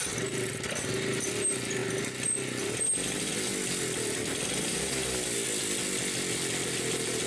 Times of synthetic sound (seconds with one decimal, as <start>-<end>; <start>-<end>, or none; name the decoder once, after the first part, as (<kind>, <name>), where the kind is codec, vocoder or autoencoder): none